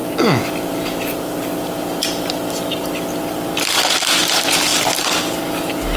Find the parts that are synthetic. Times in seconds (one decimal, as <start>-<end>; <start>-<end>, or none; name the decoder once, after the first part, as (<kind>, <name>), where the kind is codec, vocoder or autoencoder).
none